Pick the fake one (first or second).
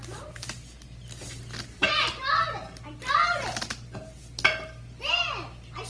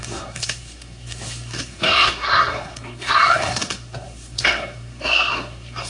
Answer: second